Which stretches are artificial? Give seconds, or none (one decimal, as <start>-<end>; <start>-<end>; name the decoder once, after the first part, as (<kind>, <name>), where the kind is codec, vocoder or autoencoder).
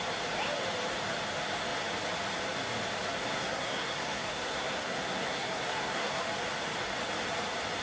3.3-6.2 (codec, SNAC)